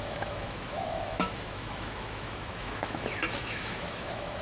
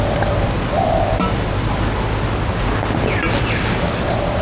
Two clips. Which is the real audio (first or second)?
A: second